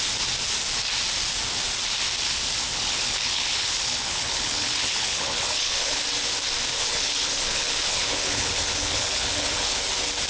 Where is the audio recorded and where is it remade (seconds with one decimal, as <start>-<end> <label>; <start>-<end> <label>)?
0.0-2.7 recorded; 2.7-6.0 remade; 6.0-6.8 recorded; 6.8-9.8 remade; 9.8-10.3 recorded